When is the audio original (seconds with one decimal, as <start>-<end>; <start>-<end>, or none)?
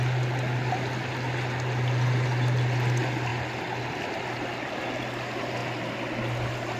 0.0-6.8